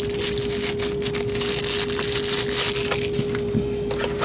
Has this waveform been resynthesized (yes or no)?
no